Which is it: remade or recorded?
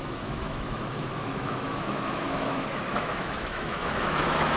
remade